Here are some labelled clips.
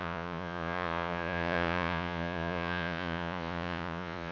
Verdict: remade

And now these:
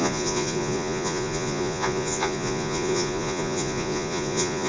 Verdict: remade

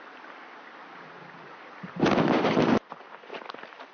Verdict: recorded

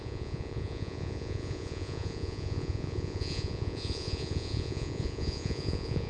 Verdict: remade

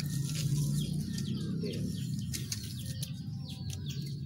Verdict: recorded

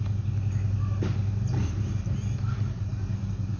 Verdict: recorded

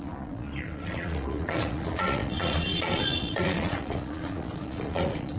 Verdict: remade